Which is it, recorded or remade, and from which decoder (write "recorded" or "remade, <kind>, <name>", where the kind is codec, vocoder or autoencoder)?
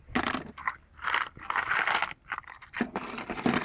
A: recorded